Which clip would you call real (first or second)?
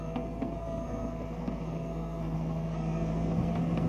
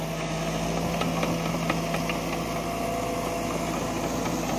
second